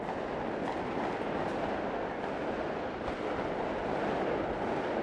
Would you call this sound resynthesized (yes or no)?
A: no